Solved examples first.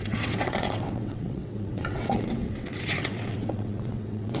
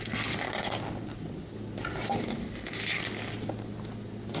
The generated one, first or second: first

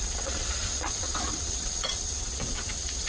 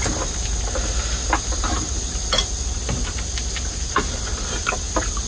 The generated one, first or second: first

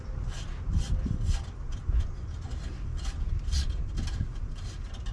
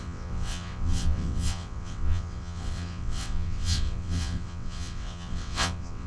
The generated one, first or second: second